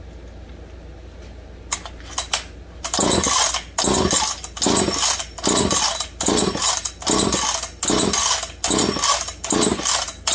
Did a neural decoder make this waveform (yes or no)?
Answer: no